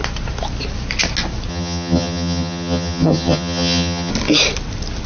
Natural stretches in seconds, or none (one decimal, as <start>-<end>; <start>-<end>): 0.0-1.5; 4.1-5.1